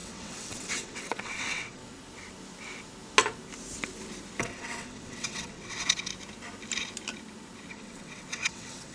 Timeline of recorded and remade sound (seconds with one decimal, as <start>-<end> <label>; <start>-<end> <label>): 0.0-1.8 remade; 1.8-4.4 recorded; 4.4-6.1 remade; 6.1-7.7 recorded; 7.7-8.9 remade